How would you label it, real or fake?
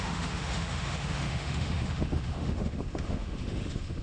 fake